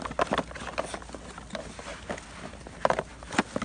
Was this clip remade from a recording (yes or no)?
no